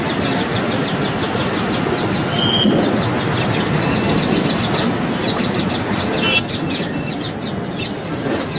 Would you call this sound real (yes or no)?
yes